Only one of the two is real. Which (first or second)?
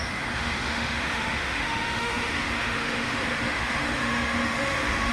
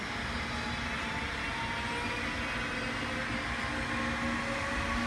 second